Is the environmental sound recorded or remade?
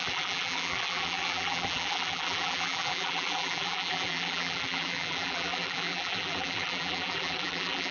remade